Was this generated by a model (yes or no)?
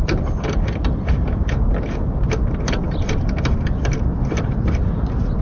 no